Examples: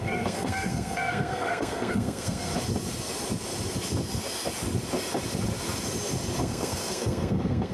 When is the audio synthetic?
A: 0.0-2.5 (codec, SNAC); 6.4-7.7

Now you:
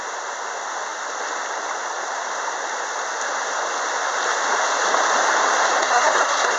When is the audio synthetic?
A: 5.8-6.6 (codec, SNAC)

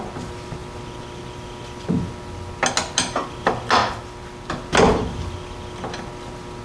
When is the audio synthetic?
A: none

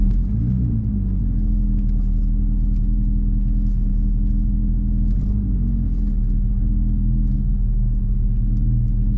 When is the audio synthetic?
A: none

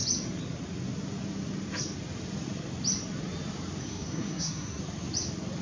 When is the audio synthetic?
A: 3.8-4.8 (codec, SNAC)